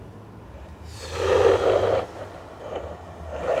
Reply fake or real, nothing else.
real